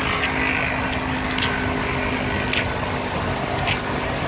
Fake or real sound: real